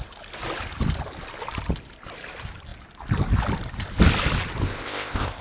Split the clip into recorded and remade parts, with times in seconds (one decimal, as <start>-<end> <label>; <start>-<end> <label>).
0.0-4.6 recorded; 4.6-5.4 remade